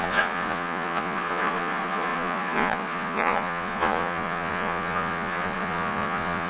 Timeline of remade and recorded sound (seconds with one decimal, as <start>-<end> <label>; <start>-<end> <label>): 0.0-6.5 remade